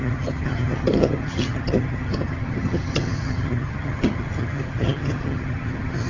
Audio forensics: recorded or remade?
remade